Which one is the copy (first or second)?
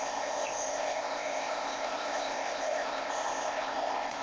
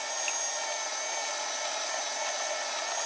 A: first